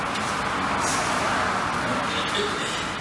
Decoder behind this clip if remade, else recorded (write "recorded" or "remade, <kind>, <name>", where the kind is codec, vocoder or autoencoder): recorded